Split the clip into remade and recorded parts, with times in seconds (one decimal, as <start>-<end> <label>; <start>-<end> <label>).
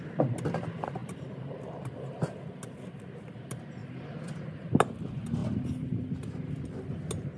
0.0-7.4 recorded